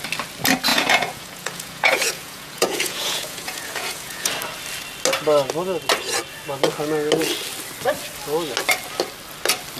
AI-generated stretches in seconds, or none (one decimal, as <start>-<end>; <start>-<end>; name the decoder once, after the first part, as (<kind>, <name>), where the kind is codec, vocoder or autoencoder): 0.7-4.3 (vocoder, Vocos)